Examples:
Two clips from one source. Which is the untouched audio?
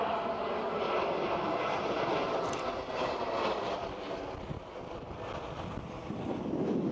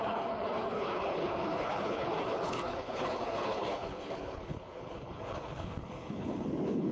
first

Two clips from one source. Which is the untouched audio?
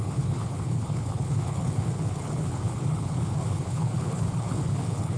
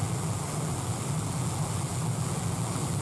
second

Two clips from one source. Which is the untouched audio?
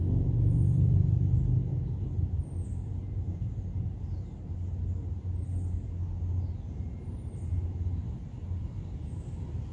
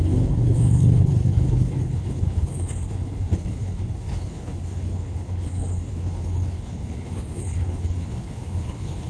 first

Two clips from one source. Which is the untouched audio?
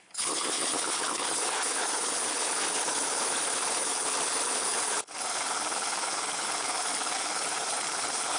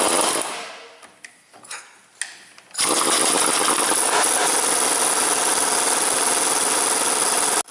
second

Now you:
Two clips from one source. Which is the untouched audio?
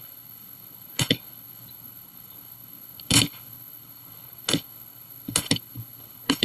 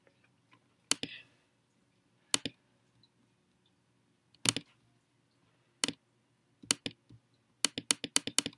second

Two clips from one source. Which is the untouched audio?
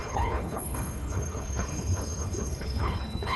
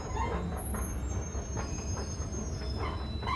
second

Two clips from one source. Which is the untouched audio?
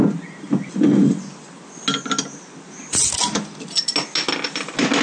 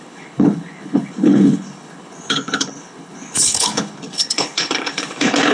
first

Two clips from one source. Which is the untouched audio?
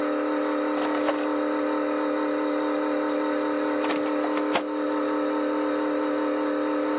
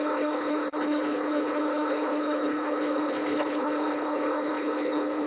first